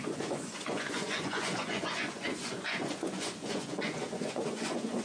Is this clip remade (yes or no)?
yes